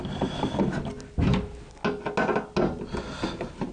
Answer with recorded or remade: recorded